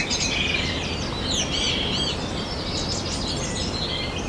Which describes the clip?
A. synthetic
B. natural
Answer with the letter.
B